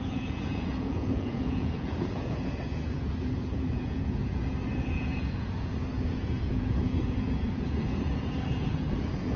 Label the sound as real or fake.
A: fake